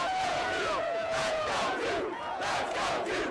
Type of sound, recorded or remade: remade